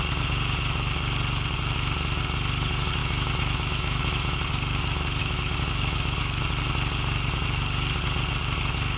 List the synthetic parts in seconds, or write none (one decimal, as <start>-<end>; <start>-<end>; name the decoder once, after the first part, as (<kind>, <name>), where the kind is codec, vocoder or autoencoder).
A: 3.0-4.5 (autoencoder, DAC-VAE); 5.2-6.4